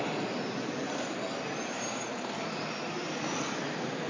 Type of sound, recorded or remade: recorded